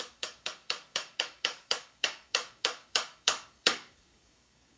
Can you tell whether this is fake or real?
fake